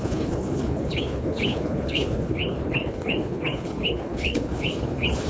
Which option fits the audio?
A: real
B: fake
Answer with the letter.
B